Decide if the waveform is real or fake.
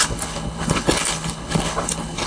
fake